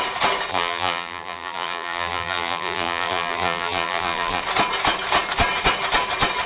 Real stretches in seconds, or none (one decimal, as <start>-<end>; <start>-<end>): 0.0-0.5; 4.4-6.5